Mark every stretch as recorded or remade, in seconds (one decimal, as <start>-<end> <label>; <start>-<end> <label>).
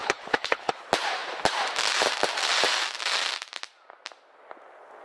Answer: 0.0-0.7 remade; 0.7-5.0 recorded